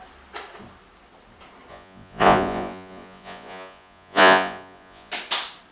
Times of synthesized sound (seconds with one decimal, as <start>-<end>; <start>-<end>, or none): 1.7-5.1